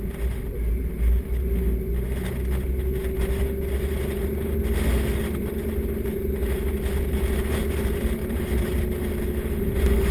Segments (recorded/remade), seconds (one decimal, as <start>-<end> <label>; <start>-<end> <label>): 0.0-8.2 recorded; 8.2-8.8 remade; 8.8-10.1 recorded